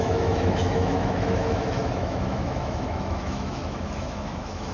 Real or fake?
fake